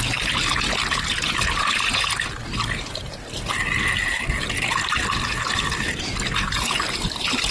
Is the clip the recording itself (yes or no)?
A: yes